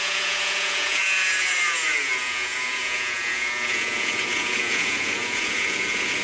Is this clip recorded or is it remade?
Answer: remade